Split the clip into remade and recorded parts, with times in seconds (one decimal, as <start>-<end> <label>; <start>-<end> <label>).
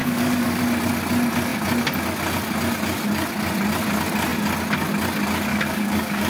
0.0-0.6 remade; 0.6-5.5 recorded; 5.5-6.3 remade